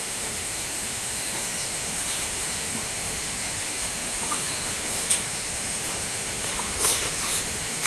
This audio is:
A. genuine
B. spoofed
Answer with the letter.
B